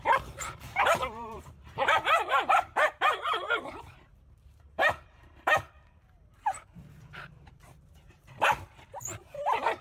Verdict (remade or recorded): remade